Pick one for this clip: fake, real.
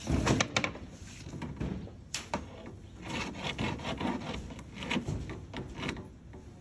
real